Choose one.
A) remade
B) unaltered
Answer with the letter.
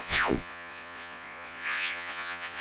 A